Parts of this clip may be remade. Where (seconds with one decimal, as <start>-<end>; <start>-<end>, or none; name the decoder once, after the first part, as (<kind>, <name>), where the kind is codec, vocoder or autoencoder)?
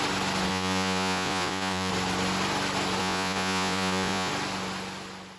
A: 0.5-1.9 (vocoder, Vocos); 3.0-4.3